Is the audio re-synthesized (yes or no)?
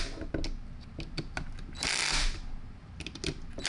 no